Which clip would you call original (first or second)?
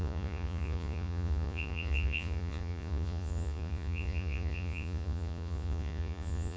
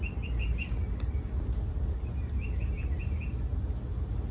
second